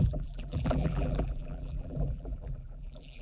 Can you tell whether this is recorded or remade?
remade